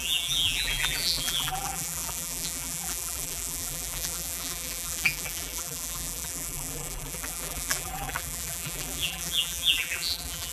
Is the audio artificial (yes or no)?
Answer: yes